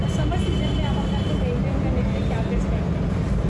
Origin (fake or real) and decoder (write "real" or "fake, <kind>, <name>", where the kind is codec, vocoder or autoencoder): real